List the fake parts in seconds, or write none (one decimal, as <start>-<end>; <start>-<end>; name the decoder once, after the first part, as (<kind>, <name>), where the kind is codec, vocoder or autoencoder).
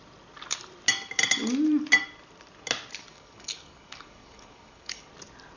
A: 3.1-5.1 (codec, DAC)